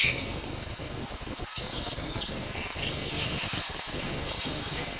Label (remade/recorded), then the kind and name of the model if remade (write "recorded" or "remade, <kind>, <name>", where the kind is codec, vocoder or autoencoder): remade, codec, SNAC